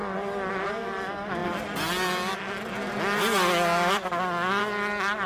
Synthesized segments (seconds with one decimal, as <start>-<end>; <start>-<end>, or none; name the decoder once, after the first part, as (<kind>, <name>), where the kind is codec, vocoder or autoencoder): none